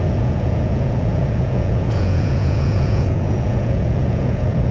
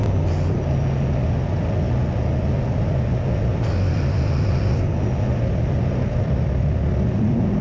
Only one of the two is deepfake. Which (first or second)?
first